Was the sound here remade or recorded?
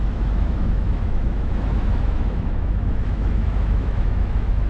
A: remade